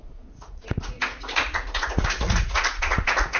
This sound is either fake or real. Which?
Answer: fake